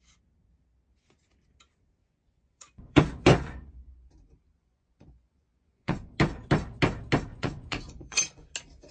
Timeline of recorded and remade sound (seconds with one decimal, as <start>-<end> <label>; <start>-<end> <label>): 0.0-2.0 recorded; 2.0-4.1 remade; 4.1-4.6 recorded; 4.6-6.1 remade; 6.1-7.3 recorded; 7.3-8.5 remade; 8.5-8.9 recorded